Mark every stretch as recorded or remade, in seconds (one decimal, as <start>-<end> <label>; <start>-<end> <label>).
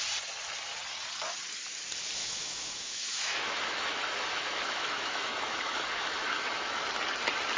0.0-2.2 recorded; 2.2-6.8 remade; 6.8-7.6 recorded